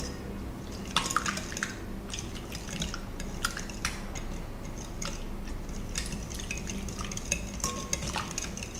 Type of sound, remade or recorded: recorded